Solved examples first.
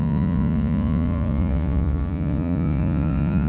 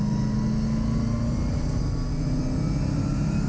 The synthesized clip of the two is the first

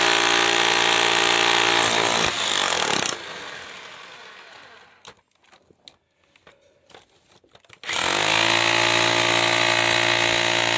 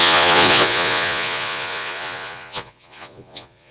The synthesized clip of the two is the second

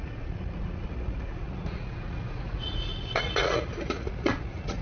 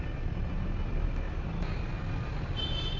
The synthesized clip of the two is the first